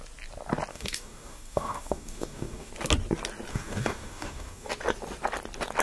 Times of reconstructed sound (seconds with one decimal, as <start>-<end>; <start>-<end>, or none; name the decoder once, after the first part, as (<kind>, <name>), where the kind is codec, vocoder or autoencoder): 0.7-2.7 (codec, DAC); 3.5-4.7